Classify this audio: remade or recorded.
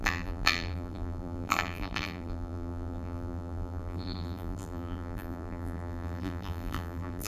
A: remade